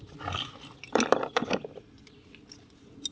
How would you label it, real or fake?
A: real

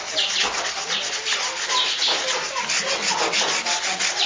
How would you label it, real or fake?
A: real